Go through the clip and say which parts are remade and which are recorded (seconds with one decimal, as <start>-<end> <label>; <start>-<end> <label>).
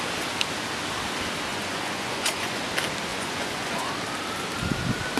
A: 0.0-1.5 recorded; 1.5-2.6 remade; 2.6-3.1 recorded; 3.1-3.9 remade; 3.9-5.2 recorded